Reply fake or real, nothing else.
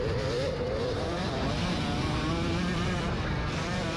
fake